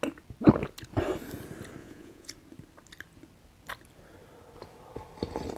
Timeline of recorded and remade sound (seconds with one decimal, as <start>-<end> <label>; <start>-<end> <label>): 0.0-1.8 recorded; 1.8-2.3 remade; 2.3-5.6 recorded